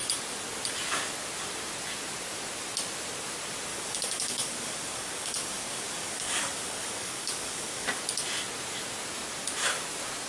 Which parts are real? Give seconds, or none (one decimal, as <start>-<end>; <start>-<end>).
0.0-3.7; 8.0-10.3